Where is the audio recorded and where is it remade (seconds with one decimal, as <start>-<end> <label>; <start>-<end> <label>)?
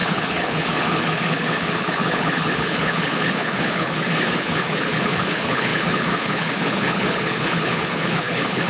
0.0-8.7 remade